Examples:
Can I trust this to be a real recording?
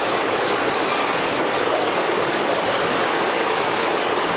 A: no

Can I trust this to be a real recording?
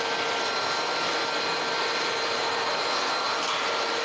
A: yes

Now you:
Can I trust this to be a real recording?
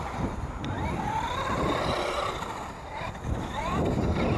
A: yes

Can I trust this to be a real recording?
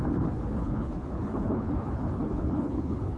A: no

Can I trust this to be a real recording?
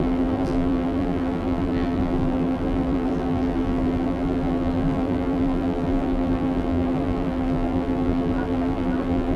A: no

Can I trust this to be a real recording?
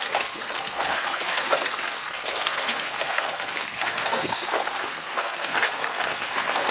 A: no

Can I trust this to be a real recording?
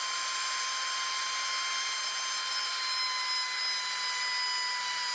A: yes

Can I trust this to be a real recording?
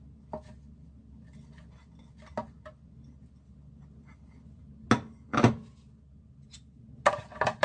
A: yes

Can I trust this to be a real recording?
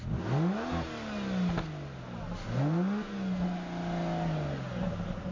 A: yes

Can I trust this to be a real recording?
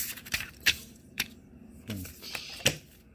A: no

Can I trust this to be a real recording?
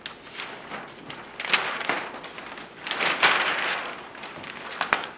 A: yes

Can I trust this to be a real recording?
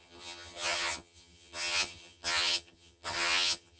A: no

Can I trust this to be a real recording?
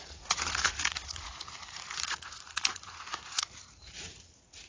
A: no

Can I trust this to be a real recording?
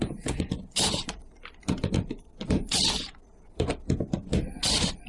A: no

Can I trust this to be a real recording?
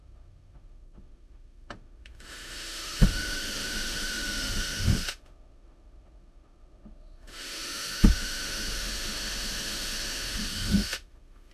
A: no